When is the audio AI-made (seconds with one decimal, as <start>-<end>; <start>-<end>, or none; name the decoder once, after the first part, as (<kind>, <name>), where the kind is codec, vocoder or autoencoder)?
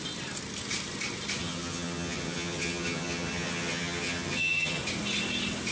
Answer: 1.4-4.8 (vocoder, HiFi-GAN)